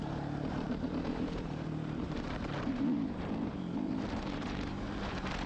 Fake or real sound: fake